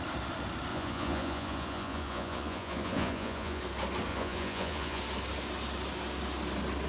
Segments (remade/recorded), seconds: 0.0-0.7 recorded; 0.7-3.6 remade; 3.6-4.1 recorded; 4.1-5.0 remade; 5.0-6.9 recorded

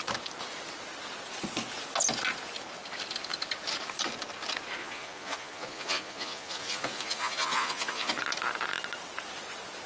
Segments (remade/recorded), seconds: 0.0-4.8 recorded; 4.8-8.1 remade; 8.1-9.9 recorded

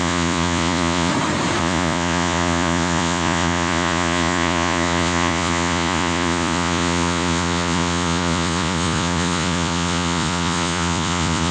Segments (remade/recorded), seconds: 0.0-1.1 remade; 1.1-1.6 recorded; 1.6-11.5 remade

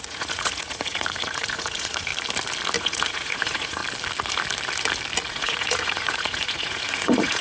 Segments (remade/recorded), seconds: 0.0-2.1 remade; 2.1-2.8 recorded; 2.8-3.8 remade; 3.8-5.3 recorded; 5.3-7.4 remade

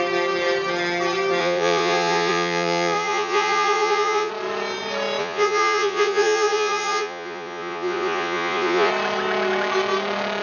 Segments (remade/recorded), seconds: 0.0-1.4 recorded; 1.4-4.3 remade; 4.3-5.2 recorded; 5.2-8.9 remade; 8.9-10.4 recorded

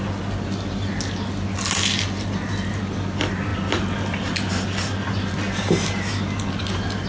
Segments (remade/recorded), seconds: 0.0-7.1 recorded

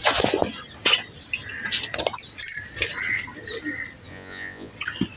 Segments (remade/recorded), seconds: 0.0-4.1 recorded; 4.1-4.7 remade; 4.7-5.2 recorded